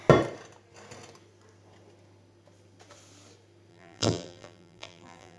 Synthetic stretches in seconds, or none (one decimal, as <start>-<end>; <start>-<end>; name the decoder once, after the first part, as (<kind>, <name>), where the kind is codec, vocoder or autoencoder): 3.7-5.4 (vocoder, BigVGAN v2)